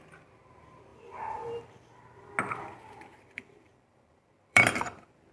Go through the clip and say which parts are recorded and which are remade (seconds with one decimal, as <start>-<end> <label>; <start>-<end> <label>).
0.0-0.9 recorded; 0.9-2.3 remade; 2.3-3.1 recorded; 3.1-5.3 remade